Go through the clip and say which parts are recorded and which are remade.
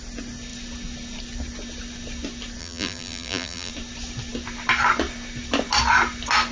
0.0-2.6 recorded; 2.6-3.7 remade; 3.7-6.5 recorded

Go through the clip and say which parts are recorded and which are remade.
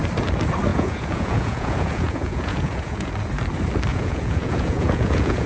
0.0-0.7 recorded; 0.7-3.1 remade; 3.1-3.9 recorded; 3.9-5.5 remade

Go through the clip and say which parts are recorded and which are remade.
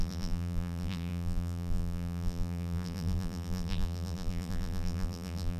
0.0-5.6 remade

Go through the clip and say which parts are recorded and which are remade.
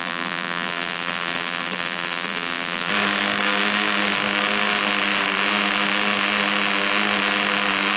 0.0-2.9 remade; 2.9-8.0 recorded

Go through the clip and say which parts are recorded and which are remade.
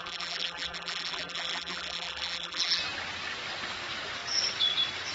0.0-2.8 remade; 2.8-5.1 recorded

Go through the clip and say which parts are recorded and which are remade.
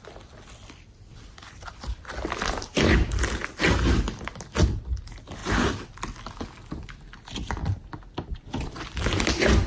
0.0-9.7 recorded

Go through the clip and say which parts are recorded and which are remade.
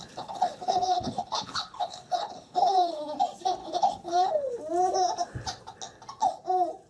0.0-3.0 remade; 3.0-3.6 recorded; 3.6-4.6 remade; 4.6-6.9 recorded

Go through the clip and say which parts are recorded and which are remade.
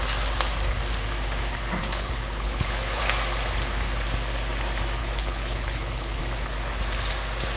0.0-1.8 recorded; 1.8-3.0 remade; 3.0-5.0 recorded; 5.0-6.2 remade; 6.2-7.6 recorded